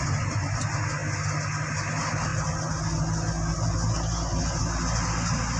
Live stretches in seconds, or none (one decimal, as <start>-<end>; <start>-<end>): 0.0-5.6